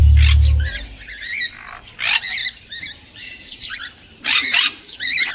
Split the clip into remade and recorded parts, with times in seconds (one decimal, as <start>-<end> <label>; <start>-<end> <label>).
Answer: 0.0-2.4 recorded; 2.4-5.3 remade